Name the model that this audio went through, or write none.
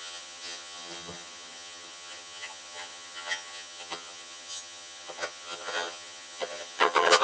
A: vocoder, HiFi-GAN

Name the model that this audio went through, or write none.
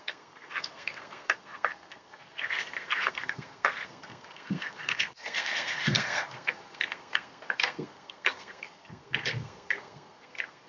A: codec, SNAC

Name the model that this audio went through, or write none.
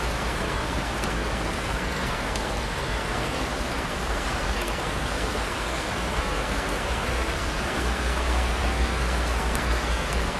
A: codec, SNAC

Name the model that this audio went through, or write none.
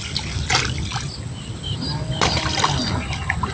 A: none